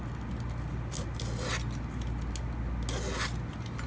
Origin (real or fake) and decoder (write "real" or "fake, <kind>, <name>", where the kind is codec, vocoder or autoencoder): real